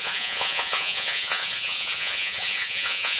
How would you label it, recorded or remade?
remade